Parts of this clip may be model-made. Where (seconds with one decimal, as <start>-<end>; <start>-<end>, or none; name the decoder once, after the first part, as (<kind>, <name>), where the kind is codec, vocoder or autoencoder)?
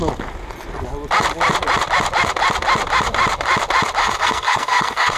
4.0-5.2 (codec, SNAC)